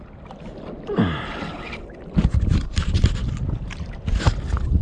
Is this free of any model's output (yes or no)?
yes